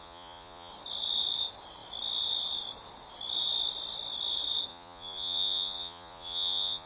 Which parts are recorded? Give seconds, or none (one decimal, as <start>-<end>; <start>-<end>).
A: 0.7-4.7